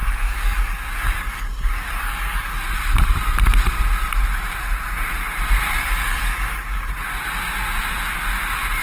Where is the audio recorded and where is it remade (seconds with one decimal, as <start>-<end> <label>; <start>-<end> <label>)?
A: 0.0-2.6 remade; 2.6-5.8 recorded; 5.8-6.9 remade; 6.9-8.8 recorded